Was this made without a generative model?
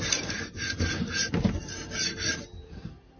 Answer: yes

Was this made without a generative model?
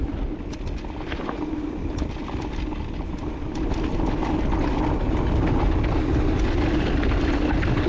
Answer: yes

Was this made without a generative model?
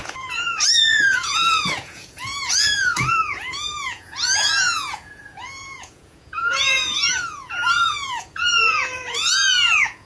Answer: no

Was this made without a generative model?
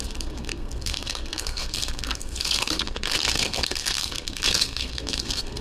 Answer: no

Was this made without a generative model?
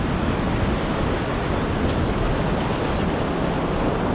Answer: yes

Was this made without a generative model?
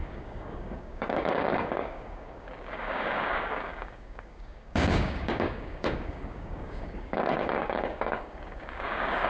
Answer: no